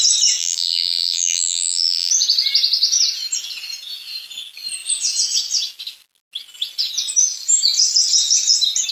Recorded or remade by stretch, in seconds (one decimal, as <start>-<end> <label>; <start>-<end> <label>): 0.0-0.4 recorded; 0.4-2.1 remade; 2.1-8.9 recorded